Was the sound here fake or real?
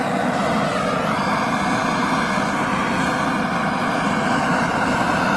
real